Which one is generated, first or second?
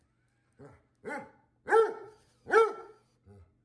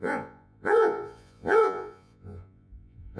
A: second